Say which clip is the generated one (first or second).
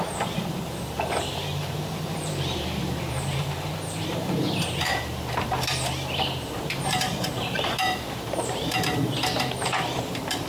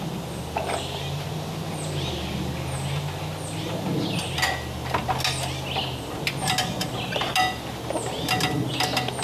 first